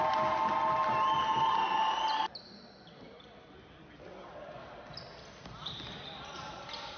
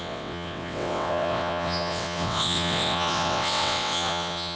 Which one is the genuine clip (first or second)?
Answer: first